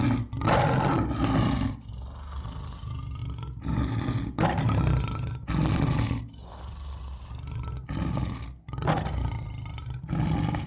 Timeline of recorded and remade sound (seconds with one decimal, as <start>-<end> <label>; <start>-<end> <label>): 0.0-10.7 recorded